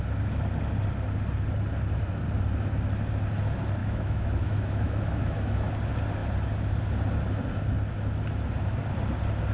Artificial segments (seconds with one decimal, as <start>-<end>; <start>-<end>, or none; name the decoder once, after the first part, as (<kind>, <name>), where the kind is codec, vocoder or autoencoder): 3.8-5.7 (autoencoder, DAC-VAE)